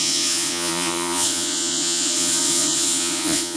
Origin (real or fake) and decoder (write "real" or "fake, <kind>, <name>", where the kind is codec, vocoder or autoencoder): fake, vocoder, Vocos